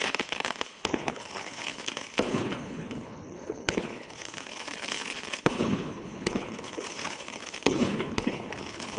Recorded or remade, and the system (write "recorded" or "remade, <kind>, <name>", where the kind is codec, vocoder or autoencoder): remade, codec, HILCodec